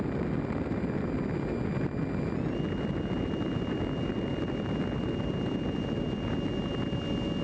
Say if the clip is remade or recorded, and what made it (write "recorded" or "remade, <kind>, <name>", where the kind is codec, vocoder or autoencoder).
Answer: recorded